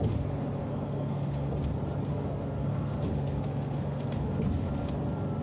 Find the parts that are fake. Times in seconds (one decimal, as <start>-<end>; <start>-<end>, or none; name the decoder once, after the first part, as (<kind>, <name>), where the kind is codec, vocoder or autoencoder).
0.6-1.5 (codec, SNAC); 2.1-4.4